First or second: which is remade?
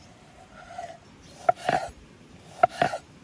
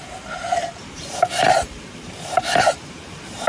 second